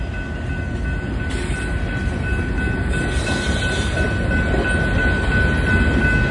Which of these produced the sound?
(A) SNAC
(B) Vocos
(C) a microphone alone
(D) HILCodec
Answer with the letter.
C